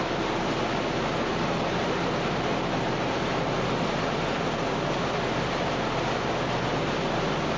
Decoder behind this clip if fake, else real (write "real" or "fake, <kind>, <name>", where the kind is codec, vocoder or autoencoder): real